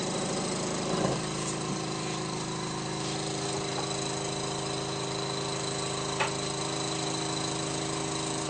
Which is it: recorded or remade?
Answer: remade